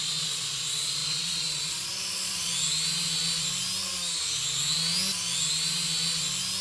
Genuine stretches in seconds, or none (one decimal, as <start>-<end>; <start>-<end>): 2.5-6.6